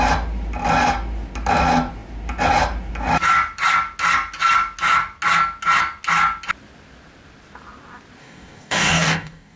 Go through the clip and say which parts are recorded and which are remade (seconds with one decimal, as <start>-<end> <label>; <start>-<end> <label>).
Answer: 0.0-8.2 recorded; 8.2-9.6 remade